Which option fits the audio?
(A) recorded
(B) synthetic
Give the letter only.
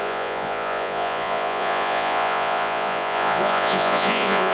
B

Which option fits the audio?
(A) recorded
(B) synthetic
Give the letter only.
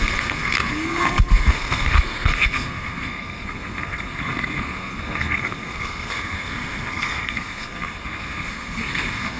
B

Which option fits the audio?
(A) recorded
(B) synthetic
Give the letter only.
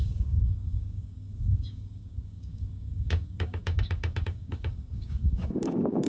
B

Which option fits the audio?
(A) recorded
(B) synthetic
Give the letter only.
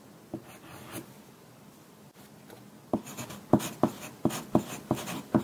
A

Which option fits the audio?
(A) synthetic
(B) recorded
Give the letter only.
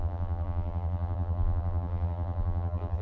A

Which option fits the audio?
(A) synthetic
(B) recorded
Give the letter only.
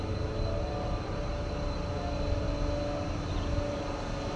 B